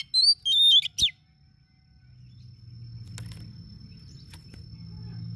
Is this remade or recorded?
recorded